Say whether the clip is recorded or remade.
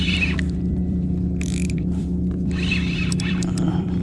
remade